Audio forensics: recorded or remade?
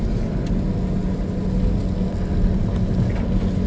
recorded